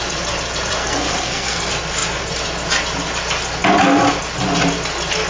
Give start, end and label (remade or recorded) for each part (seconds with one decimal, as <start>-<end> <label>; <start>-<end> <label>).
0.0-0.8 recorded; 0.8-1.6 remade; 1.6-5.3 recorded